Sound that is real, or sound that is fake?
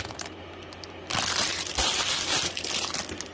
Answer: real